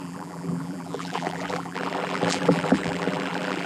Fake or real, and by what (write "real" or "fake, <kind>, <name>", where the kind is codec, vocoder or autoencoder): fake, vocoder, BigVGAN v2